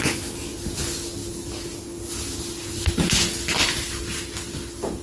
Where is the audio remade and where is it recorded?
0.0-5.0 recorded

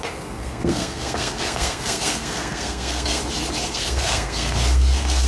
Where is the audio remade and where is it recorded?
0.0-3.2 remade; 3.2-3.7 recorded; 3.7-5.3 remade

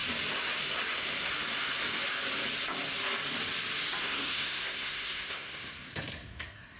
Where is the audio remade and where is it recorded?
0.0-4.0 recorded; 4.0-6.8 remade

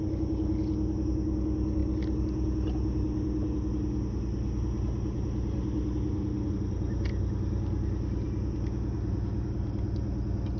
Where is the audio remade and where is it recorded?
0.0-10.6 recorded

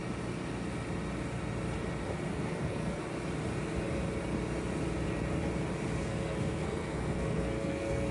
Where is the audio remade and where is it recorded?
0.0-2.3 recorded; 2.3-3.0 remade; 3.0-6.0 recorded; 6.0-8.1 remade